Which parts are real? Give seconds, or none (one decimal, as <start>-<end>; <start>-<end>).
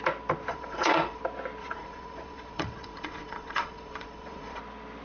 0.0-0.5; 1.2-1.6; 4.6-5.0